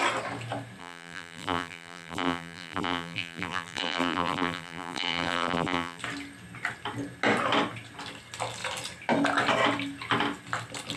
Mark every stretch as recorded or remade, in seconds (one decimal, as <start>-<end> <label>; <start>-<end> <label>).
0.0-0.8 recorded; 0.8-6.0 remade; 6.0-11.0 recorded